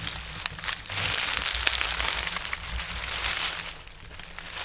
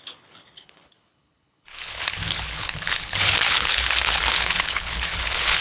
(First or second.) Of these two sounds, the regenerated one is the second